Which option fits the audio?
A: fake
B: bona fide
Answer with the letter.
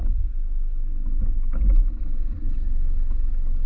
B